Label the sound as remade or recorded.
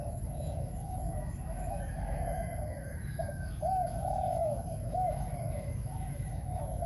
remade